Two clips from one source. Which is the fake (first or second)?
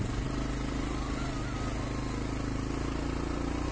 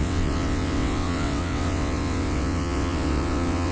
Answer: second